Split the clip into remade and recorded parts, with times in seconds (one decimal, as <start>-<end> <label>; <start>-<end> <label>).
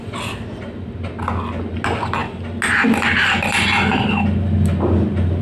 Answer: 0.0-5.4 recorded